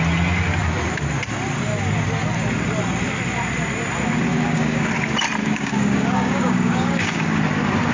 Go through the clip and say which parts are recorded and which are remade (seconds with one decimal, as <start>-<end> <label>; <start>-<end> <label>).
0.0-4.3 recorded; 4.3-4.9 remade; 4.9-5.4 recorded; 5.4-7.4 remade; 7.4-7.9 recorded